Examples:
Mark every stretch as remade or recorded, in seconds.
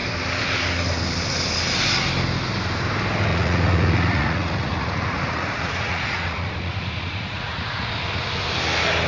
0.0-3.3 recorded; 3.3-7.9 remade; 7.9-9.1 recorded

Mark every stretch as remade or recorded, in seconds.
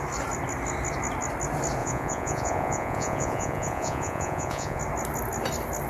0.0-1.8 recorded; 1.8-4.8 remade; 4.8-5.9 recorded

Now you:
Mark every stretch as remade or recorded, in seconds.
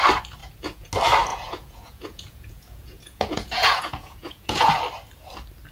0.0-0.4 recorded; 0.4-0.9 remade; 0.9-1.3 recorded; 1.3-4.7 remade; 4.7-5.7 recorded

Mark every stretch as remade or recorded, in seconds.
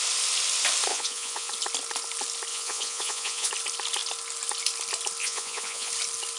0.0-0.9 recorded; 0.9-1.5 remade; 1.5-2.5 recorded; 2.5-3.5 remade; 3.5-5.2 recorded; 5.2-5.9 remade; 5.9-6.4 recorded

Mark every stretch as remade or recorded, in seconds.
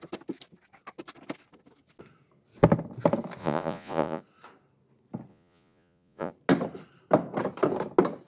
0.0-3.4 recorded; 3.4-4.2 remade; 4.2-5.3 recorded; 5.3-6.3 remade; 6.3-8.3 recorded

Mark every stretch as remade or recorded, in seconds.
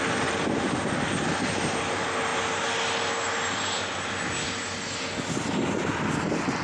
0.0-6.6 recorded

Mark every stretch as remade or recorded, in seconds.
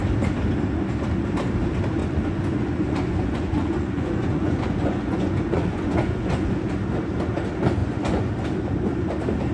0.0-2.0 recorded; 2.0-6.5 remade; 6.5-7.8 recorded; 7.8-8.3 remade; 8.3-9.5 recorded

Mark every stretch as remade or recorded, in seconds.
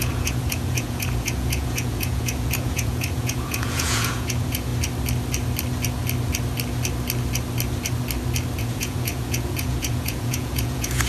0.0-4.7 remade; 4.7-8.6 recorded; 8.6-11.1 remade